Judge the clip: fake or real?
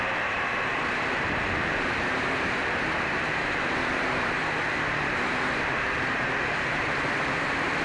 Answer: fake